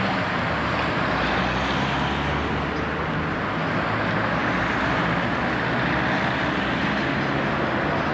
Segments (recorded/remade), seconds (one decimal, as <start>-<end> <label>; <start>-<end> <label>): 0.0-8.1 recorded